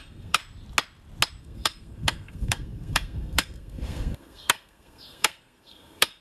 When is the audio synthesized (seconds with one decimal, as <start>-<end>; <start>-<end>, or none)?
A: 0.0-0.4; 1.4-6.2